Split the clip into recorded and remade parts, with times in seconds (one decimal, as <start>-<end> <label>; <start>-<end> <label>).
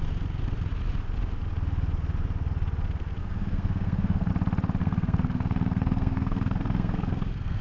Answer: 0.0-3.2 recorded; 3.2-4.3 remade; 4.3-4.8 recorded; 4.8-7.6 remade